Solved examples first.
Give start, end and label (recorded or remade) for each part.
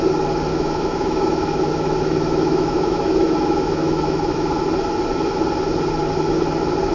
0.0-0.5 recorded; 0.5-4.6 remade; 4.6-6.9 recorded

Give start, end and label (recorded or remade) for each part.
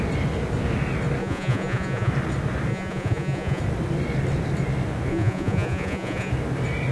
0.0-1.2 recorded; 1.2-2.1 remade; 2.1-2.7 recorded; 2.7-3.6 remade; 3.6-5.1 recorded; 5.1-6.3 remade; 6.3-6.9 recorded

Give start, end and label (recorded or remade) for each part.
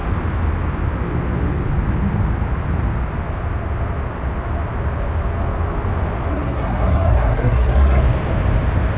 0.0-6.3 recorded; 6.3-8.0 remade; 8.0-9.0 recorded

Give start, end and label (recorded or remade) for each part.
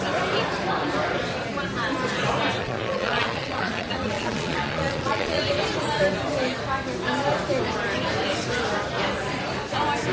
0.0-2.6 recorded; 2.6-5.4 remade; 5.4-10.1 recorded